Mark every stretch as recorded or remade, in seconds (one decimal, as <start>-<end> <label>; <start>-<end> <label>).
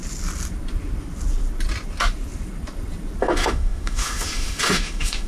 0.0-3.2 recorded; 3.2-5.3 remade